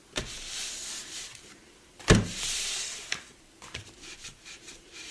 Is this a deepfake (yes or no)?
yes